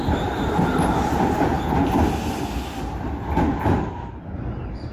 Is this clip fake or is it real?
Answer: real